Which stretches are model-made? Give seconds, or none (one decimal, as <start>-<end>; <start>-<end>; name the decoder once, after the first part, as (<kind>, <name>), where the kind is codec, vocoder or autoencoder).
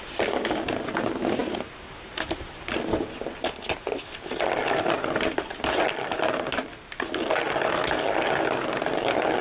none